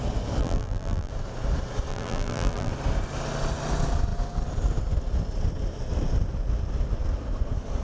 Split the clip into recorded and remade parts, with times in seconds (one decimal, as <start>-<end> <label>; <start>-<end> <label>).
0.0-0.4 recorded; 0.4-1.1 remade; 1.1-1.9 recorded; 1.9-2.7 remade; 2.7-7.8 recorded